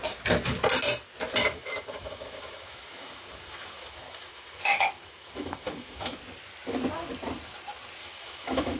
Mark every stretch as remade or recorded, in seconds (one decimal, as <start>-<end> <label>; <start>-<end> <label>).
0.0-1.4 recorded; 1.4-6.2 remade; 6.2-8.0 recorded; 8.0-8.8 remade